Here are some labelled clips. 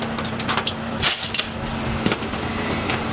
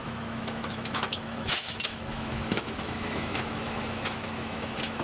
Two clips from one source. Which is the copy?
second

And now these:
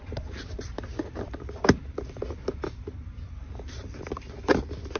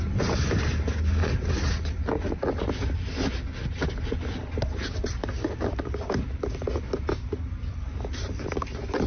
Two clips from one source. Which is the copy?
first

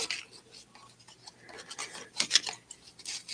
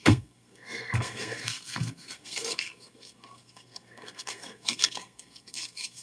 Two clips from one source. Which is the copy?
second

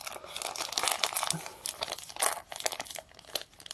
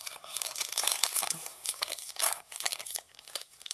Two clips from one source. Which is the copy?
second